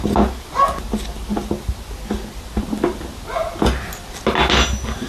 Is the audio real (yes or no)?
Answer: yes